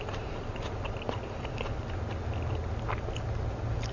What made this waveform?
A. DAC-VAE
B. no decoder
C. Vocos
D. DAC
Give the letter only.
B